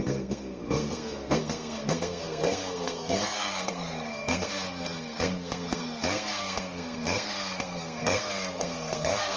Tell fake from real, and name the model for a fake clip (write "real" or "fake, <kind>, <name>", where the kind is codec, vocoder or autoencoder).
fake, codec, SNAC